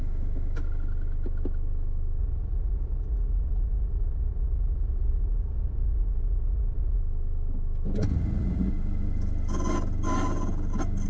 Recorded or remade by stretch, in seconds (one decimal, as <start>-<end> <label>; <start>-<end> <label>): 0.0-2.2 recorded; 2.2-7.0 remade; 7.0-8.1 recorded; 8.1-8.7 remade; 8.7-11.1 recorded